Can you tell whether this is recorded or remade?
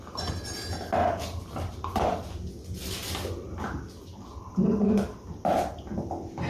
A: recorded